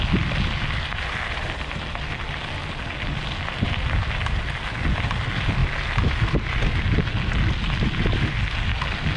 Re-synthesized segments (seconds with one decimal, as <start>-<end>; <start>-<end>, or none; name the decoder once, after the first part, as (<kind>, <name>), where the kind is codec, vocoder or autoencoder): none